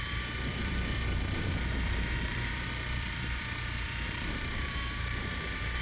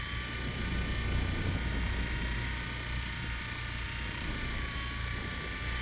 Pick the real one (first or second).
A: second